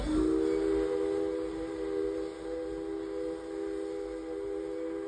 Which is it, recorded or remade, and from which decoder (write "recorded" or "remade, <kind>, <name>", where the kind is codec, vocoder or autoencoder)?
recorded